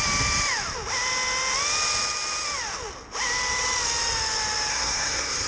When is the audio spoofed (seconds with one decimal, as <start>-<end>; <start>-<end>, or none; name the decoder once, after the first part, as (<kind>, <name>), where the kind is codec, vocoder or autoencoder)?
4.7-5.5 (codec, SNAC)